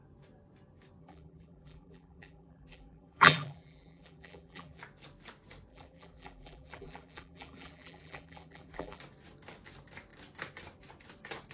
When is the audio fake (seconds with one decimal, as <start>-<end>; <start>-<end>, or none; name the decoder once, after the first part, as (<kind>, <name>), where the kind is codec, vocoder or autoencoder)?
1.0-4.8 (vocoder, BigVGAN v2); 5.7-9.0